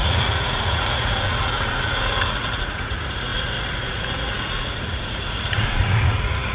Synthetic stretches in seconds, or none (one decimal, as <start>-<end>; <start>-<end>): 0.0-6.5